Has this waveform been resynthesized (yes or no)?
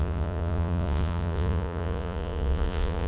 yes